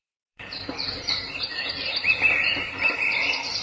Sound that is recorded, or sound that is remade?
remade